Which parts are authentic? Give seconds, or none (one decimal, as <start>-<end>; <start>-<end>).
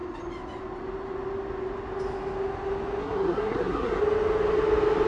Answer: 0.0-3.0; 4.0-5.1